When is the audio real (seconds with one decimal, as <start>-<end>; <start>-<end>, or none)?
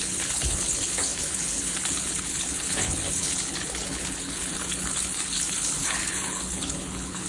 none